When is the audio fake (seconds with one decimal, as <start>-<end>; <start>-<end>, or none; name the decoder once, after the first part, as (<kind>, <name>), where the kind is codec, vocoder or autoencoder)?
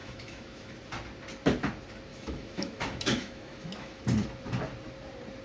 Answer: 0.0-0.7 (autoencoder, DAC-VAE); 2.1-4.0